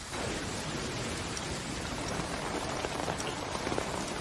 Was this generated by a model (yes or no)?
yes